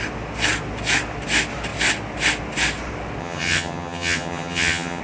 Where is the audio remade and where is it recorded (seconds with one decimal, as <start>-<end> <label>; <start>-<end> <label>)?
0.0-3.2 recorded; 3.2-5.0 remade